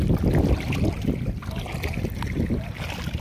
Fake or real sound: real